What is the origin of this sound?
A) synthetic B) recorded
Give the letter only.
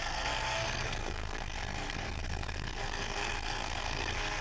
A